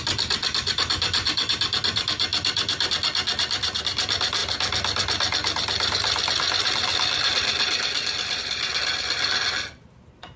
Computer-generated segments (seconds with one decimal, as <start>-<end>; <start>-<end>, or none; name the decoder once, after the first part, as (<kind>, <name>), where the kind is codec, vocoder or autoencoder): none